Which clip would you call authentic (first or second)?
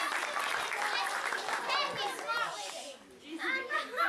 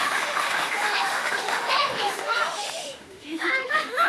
first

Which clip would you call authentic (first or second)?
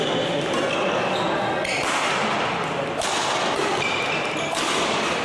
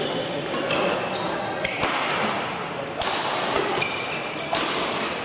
first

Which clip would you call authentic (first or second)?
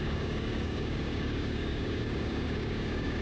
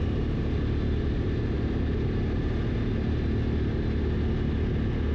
second